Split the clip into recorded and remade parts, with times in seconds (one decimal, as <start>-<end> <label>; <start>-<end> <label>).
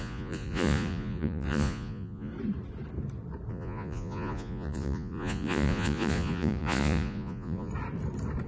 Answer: 0.0-2.3 remade; 2.3-3.5 recorded; 3.5-7.7 remade; 7.7-8.5 recorded